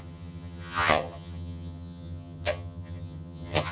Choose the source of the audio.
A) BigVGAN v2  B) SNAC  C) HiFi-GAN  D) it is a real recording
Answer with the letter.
C